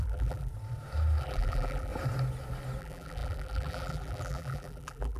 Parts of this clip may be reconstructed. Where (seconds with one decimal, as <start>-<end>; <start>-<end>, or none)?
0.0-0.5; 1.2-1.9; 2.8-5.2